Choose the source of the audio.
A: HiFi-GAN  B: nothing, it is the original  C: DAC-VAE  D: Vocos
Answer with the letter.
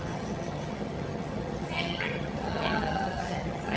A